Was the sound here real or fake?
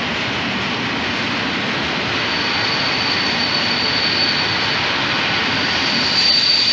real